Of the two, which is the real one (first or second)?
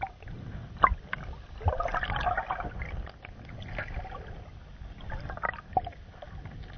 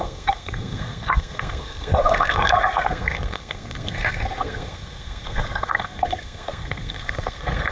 first